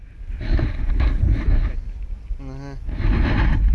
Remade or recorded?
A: recorded